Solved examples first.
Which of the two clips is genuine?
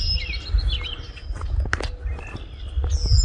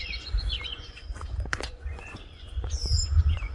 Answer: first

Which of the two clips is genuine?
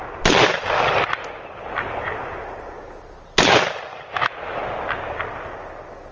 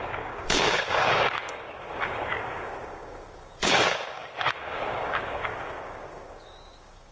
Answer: first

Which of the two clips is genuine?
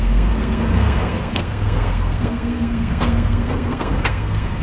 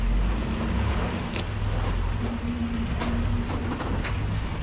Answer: second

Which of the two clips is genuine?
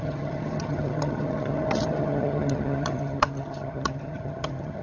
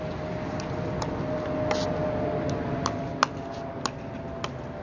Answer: second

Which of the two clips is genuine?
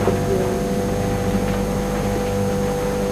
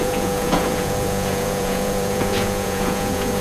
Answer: first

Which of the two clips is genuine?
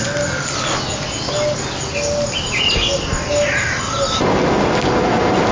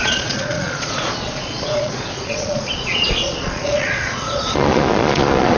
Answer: first